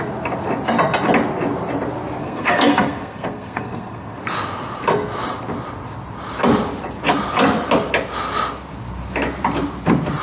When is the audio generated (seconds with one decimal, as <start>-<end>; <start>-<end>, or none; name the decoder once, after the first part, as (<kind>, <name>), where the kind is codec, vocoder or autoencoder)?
2.2-4.2 (codec, SNAC)